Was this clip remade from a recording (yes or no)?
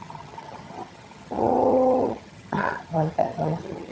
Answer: yes